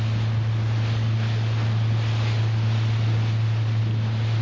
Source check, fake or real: real